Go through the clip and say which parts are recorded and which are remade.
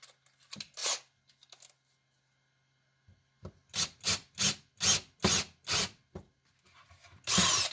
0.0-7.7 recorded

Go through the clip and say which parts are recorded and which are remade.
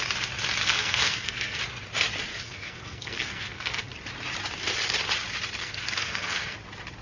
0.0-0.6 recorded; 0.6-1.6 remade; 1.6-2.3 recorded; 2.3-3.8 remade; 3.8-5.6 recorded; 5.6-6.6 remade; 6.6-7.0 recorded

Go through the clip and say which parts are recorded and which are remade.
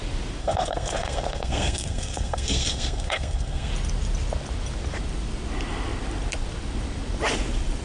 0.0-0.4 recorded; 0.4-3.7 remade; 3.7-7.8 recorded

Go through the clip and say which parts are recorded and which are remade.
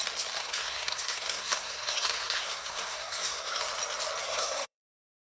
0.0-0.4 recorded; 0.4-3.6 remade; 3.6-4.2 recorded; 4.2-5.4 remade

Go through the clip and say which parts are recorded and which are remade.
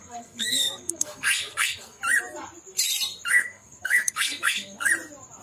0.0-2.0 remade; 2.0-3.3 recorded; 3.3-4.9 remade; 4.9-5.4 recorded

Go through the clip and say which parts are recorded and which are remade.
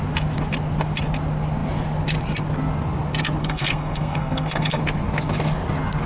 0.0-3.4 recorded; 3.4-4.8 remade; 4.8-6.1 recorded